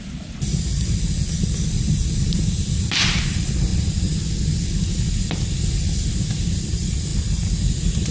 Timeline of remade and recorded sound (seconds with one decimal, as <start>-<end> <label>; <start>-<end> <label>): 0.0-8.1 recorded